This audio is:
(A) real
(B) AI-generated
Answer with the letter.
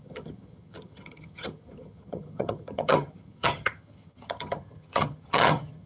B